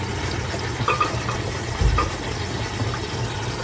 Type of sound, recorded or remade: recorded